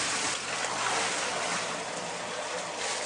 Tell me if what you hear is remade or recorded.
recorded